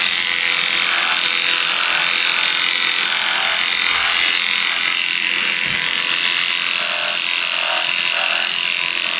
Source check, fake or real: real